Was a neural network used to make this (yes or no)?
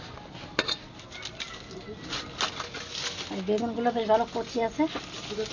no